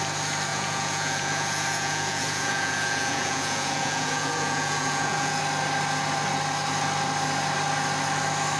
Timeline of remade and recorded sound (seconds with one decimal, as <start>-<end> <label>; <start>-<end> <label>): 0.0-0.5 recorded; 0.5-5.4 remade; 5.4-8.6 recorded